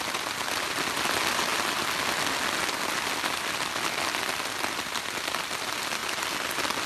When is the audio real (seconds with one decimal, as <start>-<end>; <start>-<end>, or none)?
0.0-6.9

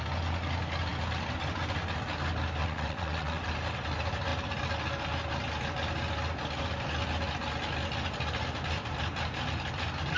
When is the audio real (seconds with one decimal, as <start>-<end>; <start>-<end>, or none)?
0.0-2.6; 3.5-10.2

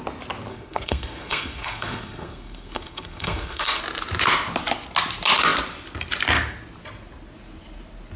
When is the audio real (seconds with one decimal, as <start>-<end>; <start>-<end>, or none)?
0.0-0.5; 3.8-8.2

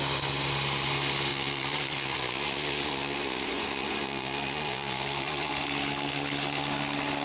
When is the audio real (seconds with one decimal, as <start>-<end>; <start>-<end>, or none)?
0.0-1.3; 5.5-7.2

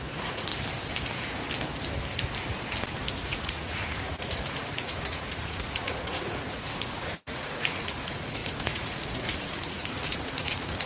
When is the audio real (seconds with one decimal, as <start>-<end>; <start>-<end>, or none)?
0.5-3.1

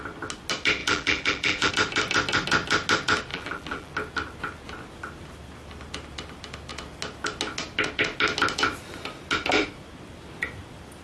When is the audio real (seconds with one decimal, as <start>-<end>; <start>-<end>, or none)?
0.0-0.8; 1.7-3.3; 3.9-11.0